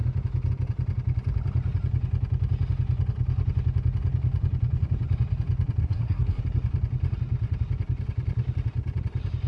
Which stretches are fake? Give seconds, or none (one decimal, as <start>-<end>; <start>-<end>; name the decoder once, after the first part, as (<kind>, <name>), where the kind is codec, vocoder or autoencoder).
5.8-6.4 (codec, SNAC)